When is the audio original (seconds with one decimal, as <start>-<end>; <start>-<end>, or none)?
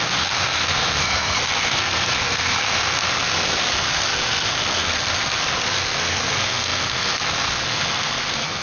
4.9-5.7